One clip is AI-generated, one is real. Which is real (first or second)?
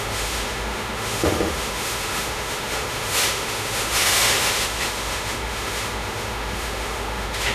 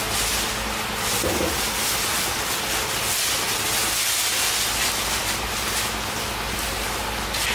second